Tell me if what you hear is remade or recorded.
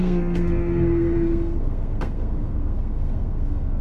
remade